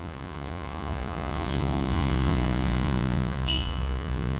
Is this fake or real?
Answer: fake